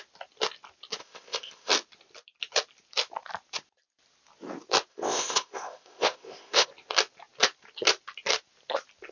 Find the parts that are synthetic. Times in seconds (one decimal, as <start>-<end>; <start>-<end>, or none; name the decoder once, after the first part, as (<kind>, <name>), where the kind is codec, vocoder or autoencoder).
1.0-1.7 (codec, ZipCodec); 4.9-6.7